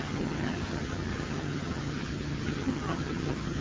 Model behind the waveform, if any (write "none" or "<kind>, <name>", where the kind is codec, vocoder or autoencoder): vocoder, HiFi-GAN